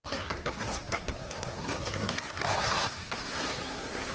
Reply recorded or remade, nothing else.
remade